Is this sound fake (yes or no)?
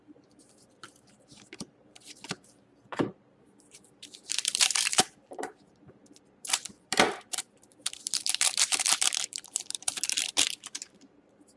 yes